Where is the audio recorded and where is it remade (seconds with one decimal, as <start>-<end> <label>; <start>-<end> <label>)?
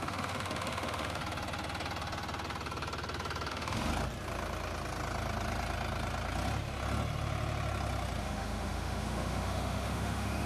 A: 0.0-1.2 remade; 1.2-3.5 recorded; 3.5-3.9 remade; 3.9-8.2 recorded; 8.2-10.5 remade